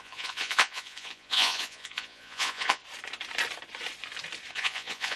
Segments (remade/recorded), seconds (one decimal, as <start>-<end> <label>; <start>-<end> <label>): 0.0-2.8 remade; 2.8-4.5 recorded; 4.5-5.2 remade

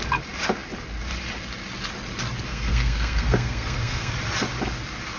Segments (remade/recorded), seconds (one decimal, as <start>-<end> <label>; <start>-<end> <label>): 0.0-2.5 recorded; 2.5-4.1 remade; 4.1-5.2 recorded

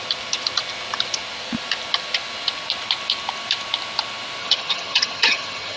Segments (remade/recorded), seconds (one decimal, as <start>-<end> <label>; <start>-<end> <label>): 0.0-4.4 recorded; 4.4-5.8 remade

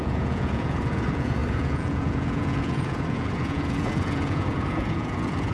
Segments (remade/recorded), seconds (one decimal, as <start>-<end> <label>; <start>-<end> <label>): 0.0-5.5 remade

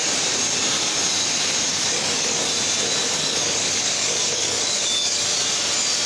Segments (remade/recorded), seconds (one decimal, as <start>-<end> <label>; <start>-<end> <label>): 0.0-1.7 recorded; 1.7-2.5 remade; 2.5-3.0 recorded; 3.0-5.2 remade; 5.2-6.1 recorded

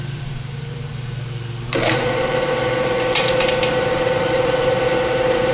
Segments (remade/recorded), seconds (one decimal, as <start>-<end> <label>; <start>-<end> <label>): 0.0-5.5 remade